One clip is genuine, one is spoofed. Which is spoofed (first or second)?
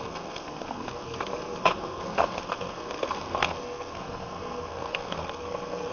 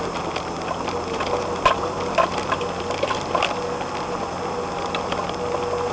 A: first